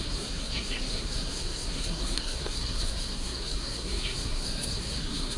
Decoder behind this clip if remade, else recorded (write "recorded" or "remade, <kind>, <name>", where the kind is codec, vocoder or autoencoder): remade, codec, SNAC